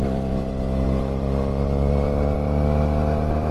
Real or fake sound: fake